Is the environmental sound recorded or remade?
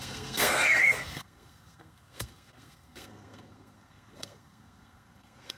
remade